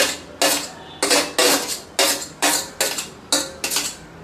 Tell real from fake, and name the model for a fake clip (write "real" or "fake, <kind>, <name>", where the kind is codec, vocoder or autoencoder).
real